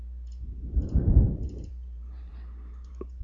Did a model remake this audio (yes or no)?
yes